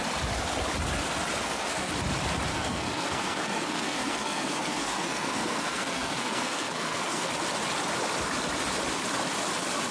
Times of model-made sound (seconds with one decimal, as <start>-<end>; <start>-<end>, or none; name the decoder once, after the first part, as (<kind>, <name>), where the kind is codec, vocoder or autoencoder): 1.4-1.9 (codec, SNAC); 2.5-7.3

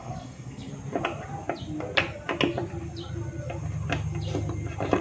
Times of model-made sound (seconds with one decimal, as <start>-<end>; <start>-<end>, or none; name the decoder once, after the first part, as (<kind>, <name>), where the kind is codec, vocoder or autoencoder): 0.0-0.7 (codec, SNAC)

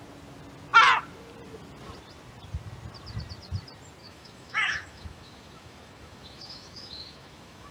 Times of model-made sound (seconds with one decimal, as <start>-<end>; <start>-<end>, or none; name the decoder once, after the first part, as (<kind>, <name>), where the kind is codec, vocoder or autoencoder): 4.0-7.7 (autoencoder, DAC-VAE)

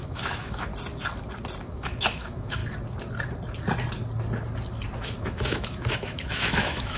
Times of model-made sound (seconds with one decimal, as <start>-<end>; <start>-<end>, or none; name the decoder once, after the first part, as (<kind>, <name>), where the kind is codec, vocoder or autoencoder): 0.0-0.7 (autoencoder, DAC-VAE); 1.6-2.6; 5.0-7.0

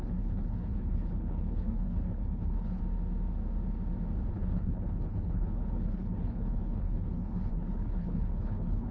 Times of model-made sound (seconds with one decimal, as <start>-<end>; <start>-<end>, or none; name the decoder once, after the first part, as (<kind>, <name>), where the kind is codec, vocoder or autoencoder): 0.0-2.8 (codec, HILCodec); 4.3-8.9